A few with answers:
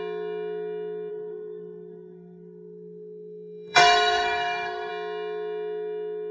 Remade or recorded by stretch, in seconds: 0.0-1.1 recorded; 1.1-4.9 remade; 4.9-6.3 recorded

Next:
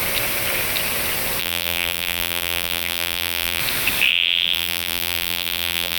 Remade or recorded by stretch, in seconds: 0.0-1.4 recorded; 1.4-3.6 remade; 3.6-4.1 recorded; 4.1-6.0 remade

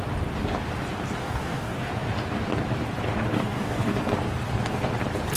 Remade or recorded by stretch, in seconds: 0.0-1.2 recorded; 1.2-1.9 remade; 1.9-3.3 recorded; 3.3-4.0 remade; 4.0-5.4 recorded

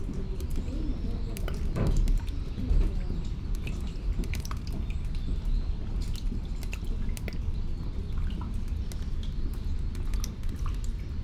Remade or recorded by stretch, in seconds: 0.0-11.2 recorded

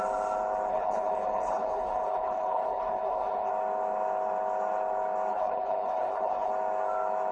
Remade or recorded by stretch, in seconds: 0.0-0.7 recorded; 0.7-3.5 remade; 3.5-5.3 recorded; 5.3-6.5 remade; 6.5-7.3 recorded

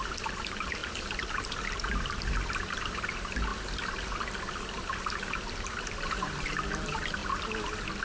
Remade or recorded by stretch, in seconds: 0.0-3.5 remade; 3.5-5.8 recorded; 5.8-7.2 remade; 7.2-8.0 recorded